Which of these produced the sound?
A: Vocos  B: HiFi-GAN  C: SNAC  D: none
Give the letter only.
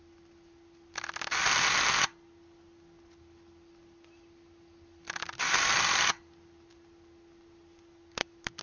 D